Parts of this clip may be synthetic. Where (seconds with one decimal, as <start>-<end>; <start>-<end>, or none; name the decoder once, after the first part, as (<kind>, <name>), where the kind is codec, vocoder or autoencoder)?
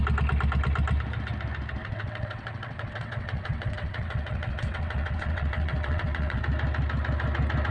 1.8-6.4 (vocoder, WaveNeXt)